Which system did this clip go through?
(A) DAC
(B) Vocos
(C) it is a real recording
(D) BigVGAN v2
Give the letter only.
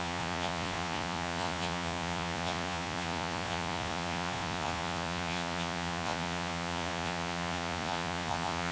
B